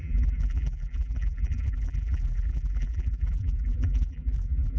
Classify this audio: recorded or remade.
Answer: remade